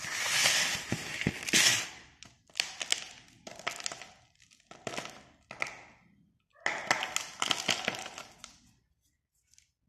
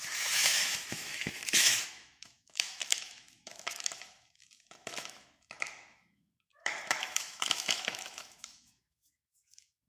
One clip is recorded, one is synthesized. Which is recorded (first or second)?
first